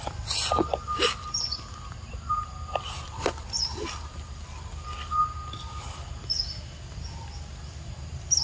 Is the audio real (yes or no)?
yes